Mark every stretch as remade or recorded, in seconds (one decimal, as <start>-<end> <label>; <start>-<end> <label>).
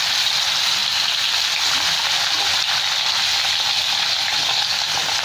0.0-0.8 remade; 0.8-3.9 recorded; 3.9-5.2 remade